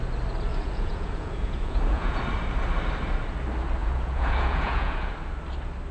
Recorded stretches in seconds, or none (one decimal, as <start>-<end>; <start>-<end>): 0.0-0.5; 2.2-3.8; 5.1-5.9